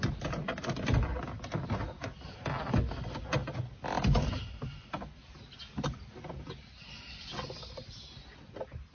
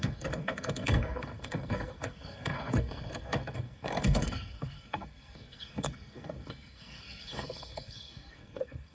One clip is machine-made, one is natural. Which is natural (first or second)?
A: first